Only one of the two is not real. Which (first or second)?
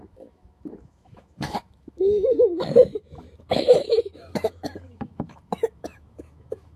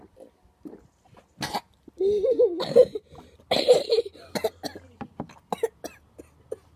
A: first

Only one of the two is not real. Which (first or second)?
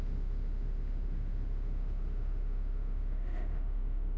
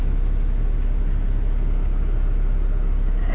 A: first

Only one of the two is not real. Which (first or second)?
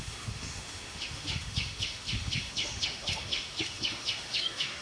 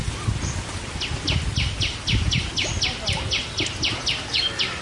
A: first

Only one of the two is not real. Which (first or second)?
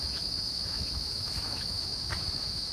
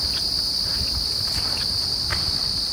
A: first